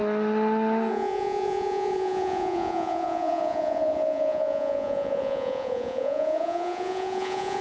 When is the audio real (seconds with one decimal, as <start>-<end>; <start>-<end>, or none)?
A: 0.0-0.9